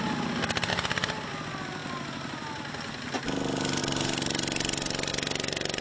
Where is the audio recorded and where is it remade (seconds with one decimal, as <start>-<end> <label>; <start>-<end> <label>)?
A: 0.0-5.8 recorded